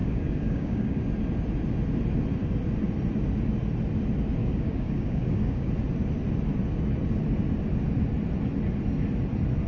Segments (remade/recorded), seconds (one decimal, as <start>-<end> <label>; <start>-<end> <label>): 0.0-1.0 remade; 1.0-4.4 recorded; 4.4-5.7 remade; 5.7-9.7 recorded